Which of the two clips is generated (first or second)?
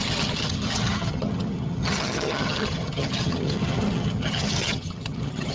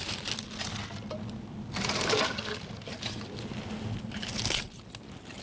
first